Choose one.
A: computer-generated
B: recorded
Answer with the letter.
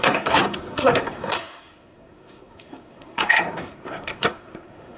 A